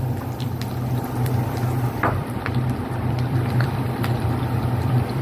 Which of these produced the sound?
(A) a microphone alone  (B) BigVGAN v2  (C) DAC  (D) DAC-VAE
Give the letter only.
B